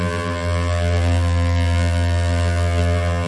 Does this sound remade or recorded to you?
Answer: remade